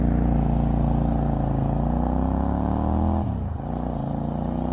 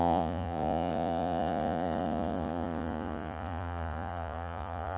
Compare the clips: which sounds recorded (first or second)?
first